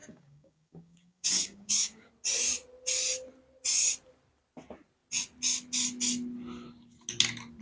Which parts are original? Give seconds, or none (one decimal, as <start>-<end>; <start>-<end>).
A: 2.1-7.6